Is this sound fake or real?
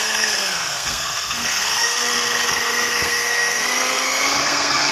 fake